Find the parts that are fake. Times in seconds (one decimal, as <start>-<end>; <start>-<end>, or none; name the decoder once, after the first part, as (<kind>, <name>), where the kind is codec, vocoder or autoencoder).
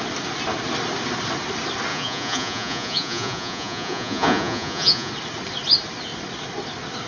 1.9-5.1 (vocoder, Vocos)